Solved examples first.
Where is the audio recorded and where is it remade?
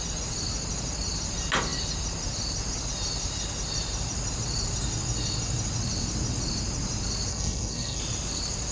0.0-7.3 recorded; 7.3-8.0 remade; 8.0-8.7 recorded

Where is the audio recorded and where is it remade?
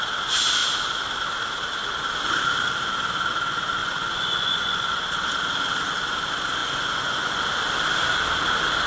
0.0-3.8 recorded; 3.8-4.9 remade; 4.9-6.6 recorded; 6.6-7.4 remade; 7.4-8.9 recorded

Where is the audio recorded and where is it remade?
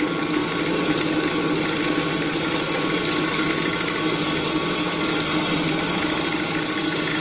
0.0-7.2 recorded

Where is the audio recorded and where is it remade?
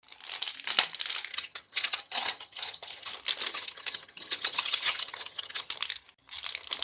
0.0-1.3 recorded; 1.3-3.1 remade; 3.1-3.5 recorded; 3.5-5.7 remade; 5.7-6.8 recorded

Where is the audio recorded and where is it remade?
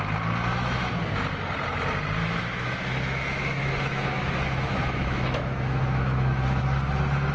0.0-0.5 recorded; 0.5-1.1 remade; 1.1-2.2 recorded; 2.2-6.6 remade; 6.6-7.3 recorded